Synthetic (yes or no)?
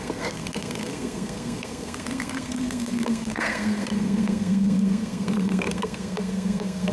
yes